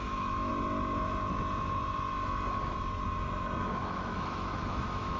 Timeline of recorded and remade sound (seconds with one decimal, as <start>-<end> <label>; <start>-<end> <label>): 0.0-0.5 remade; 0.5-3.6 recorded; 3.6-5.2 remade